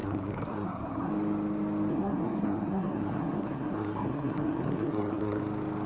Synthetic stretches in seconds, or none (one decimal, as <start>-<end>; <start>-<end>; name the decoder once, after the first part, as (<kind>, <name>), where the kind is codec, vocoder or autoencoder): 0.0-1.1 (codec, SNAC); 1.9-5.4